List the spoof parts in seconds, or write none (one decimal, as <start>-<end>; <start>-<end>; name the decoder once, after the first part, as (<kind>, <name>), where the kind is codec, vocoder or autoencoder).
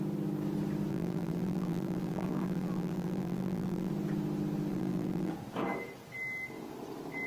0.9-3.9 (vocoder, BigVGAN v2); 4.7-5.3